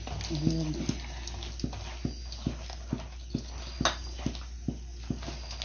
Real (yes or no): yes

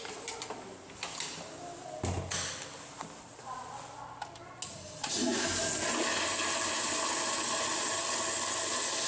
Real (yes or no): yes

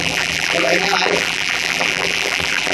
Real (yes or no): no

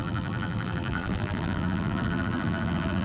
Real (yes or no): no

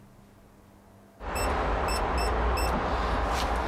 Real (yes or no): yes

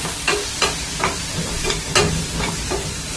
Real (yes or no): no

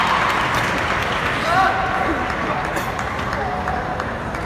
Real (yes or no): yes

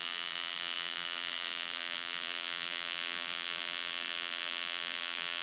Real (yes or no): no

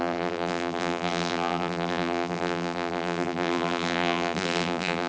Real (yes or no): no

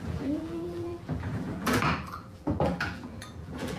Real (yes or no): no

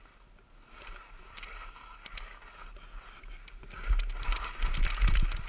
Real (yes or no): yes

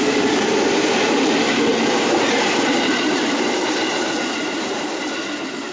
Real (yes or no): no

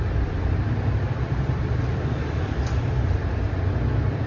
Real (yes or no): no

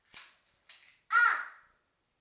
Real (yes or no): no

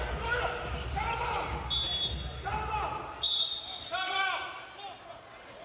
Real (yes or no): yes